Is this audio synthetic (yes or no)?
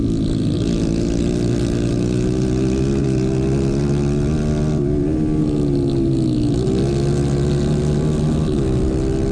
no